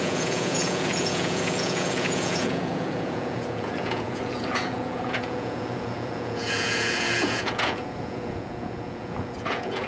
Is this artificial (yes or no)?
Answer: yes